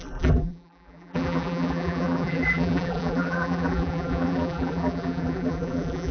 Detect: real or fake fake